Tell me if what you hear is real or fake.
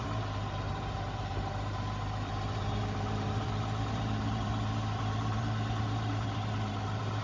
fake